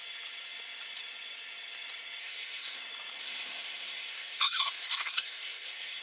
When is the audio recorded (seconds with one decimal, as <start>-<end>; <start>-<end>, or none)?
0.0-2.2; 2.8-3.2